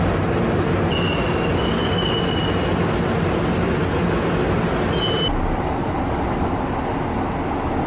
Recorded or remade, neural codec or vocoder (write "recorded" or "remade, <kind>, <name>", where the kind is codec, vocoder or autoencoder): recorded